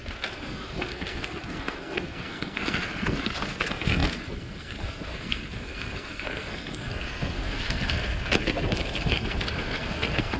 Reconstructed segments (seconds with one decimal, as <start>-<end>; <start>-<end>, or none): 0.0-10.4